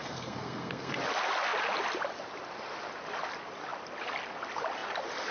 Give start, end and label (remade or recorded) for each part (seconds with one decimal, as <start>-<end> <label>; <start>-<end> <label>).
0.0-0.9 remade; 0.9-5.3 recorded